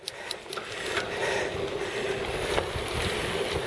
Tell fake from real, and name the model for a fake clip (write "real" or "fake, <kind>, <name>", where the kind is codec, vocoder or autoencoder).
real